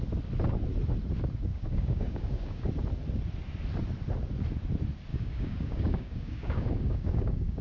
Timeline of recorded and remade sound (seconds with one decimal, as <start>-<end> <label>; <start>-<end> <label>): 0.0-1.5 recorded; 1.5-2.7 remade; 2.7-5.1 recorded; 5.1-7.6 remade